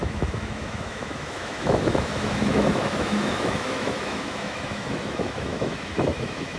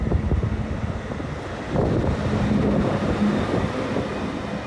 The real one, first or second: second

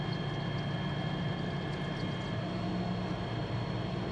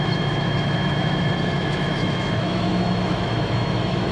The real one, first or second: first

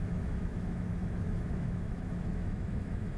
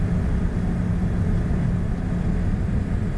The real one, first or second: second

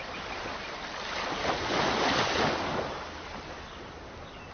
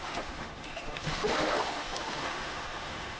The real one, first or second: first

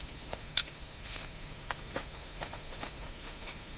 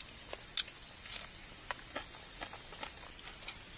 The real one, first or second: second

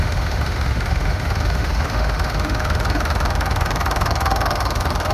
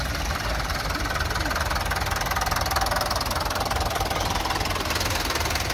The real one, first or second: second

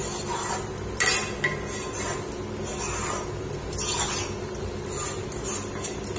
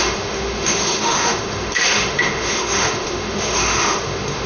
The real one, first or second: first